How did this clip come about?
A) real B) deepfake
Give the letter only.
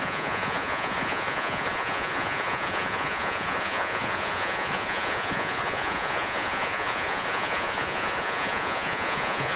B